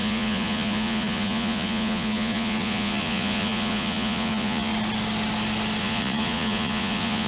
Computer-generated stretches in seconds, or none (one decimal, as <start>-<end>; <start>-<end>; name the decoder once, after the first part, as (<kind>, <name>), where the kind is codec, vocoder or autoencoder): 0.0-4.7 (vocoder, Vocos); 5.8-7.3